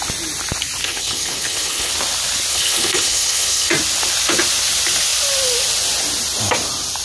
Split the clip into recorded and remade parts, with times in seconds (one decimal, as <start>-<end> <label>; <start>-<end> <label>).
0.0-0.8 recorded; 0.8-1.9 remade; 1.9-2.5 recorded; 2.5-3.7 remade; 3.7-7.0 recorded